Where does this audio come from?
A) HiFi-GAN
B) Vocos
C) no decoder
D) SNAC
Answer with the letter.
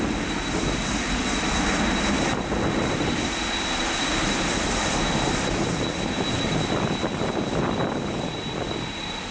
C